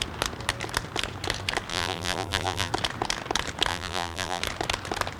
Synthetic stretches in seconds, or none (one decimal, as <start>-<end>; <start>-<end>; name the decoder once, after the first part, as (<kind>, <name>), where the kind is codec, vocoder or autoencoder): 1.7-2.7 (vocoder, BigVGAN v2); 3.7-4.4

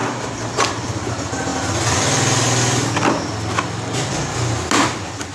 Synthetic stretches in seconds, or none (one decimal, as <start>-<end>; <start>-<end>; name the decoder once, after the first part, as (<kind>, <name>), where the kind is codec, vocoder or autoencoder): 0.0-1.1 (vocoder, BigVGAN v2); 1.5-4.1

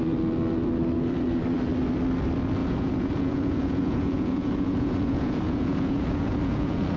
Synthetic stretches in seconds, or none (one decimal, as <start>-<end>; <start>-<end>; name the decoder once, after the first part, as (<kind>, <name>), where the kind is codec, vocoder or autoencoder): 2.6-7.0 (vocoder, Vocos)

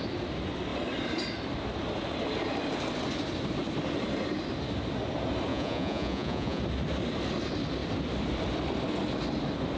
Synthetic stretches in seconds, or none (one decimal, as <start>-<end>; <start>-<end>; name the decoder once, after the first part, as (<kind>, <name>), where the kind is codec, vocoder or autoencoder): 5.5-6.6 (vocoder, Vocos)